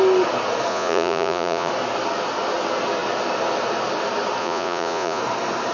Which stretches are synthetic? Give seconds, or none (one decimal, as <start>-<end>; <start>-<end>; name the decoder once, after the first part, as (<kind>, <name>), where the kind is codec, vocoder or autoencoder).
0.7-1.7 (vocoder, Vocos); 4.4-5.2

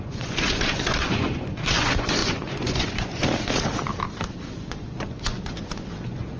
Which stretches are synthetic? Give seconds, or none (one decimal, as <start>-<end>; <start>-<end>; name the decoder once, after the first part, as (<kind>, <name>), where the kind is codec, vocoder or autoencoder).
0.0-3.2 (vocoder, Vocos); 4.3-6.4

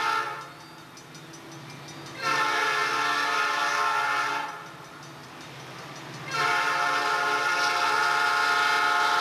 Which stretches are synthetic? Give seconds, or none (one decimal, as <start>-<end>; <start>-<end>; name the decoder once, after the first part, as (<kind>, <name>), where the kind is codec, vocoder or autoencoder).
none

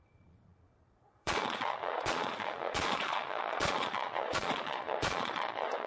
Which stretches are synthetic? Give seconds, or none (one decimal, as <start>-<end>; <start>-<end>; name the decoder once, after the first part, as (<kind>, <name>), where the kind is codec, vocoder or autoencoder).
0.0-5.9 (vocoder, Vocos)

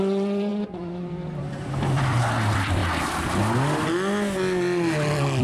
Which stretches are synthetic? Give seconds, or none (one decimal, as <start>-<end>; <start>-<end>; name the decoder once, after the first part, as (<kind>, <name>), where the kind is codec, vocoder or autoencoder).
0.0-2.8 (vocoder, BigVGAN v2)

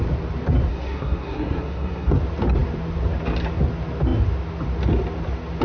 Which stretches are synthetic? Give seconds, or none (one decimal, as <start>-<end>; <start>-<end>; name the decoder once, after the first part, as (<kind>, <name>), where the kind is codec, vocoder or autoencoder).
0.7-2.2 (codec, SNAC)

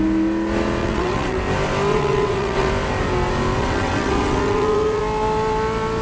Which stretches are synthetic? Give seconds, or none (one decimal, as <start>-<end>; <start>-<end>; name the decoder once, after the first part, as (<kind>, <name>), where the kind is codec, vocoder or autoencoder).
0.8-1.4 (vocoder, WaveNeXt); 1.9-2.7; 3.6-5.0